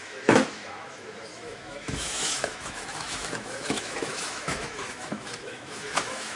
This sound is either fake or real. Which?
fake